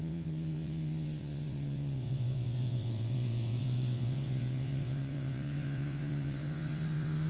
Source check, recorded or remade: remade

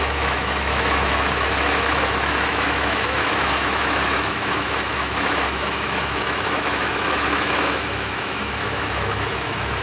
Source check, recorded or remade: remade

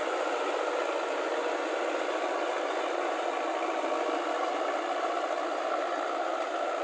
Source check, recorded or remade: recorded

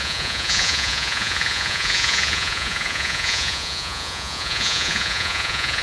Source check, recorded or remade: remade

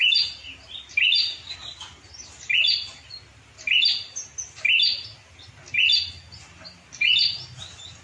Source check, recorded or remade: recorded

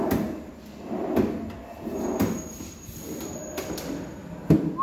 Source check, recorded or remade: recorded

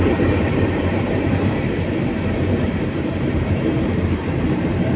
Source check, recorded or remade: remade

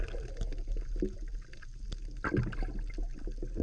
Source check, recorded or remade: recorded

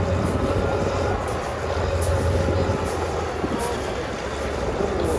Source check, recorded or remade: recorded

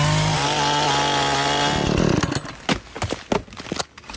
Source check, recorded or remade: recorded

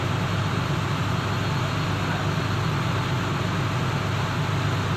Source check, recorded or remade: recorded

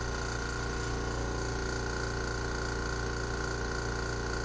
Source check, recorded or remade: recorded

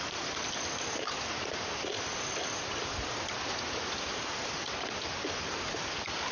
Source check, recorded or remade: recorded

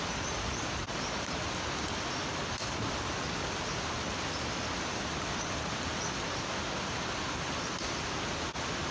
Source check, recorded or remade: recorded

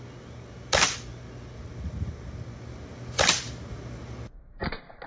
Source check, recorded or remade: recorded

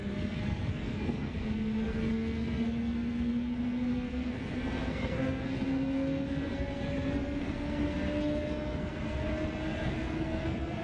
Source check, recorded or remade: remade